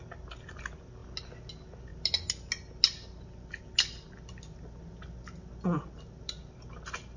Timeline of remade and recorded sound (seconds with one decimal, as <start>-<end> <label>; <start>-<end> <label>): 0.0-7.2 recorded